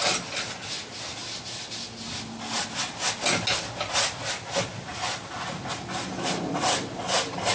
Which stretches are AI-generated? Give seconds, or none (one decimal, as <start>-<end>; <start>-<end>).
none